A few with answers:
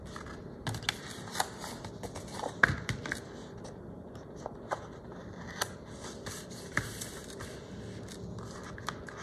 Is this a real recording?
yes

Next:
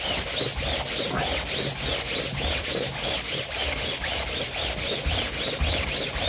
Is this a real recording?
yes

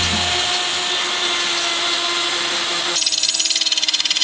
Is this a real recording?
yes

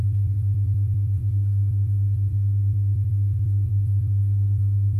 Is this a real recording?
no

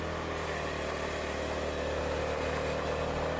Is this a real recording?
yes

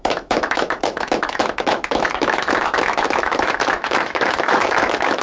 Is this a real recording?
no